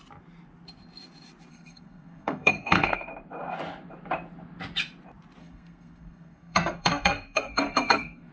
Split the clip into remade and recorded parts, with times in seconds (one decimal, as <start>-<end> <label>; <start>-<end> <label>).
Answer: 0.0-1.5 recorded; 1.5-3.1 remade; 3.1-5.4 recorded; 5.4-8.3 remade